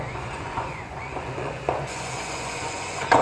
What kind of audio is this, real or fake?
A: fake